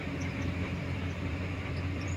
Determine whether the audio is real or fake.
fake